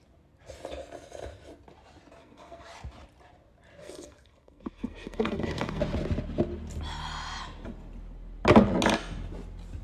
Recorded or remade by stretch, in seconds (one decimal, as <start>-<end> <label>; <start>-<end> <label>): 0.0-2.2 recorded; 2.2-2.7 remade; 2.7-3.8 recorded; 3.8-5.8 remade; 5.8-9.8 recorded